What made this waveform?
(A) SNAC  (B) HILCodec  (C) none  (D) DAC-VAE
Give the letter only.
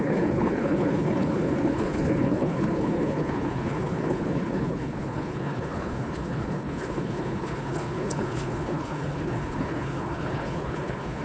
B